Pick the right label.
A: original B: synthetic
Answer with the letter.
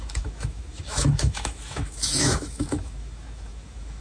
B